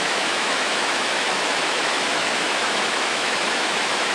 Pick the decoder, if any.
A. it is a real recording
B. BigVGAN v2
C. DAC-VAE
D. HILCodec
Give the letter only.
C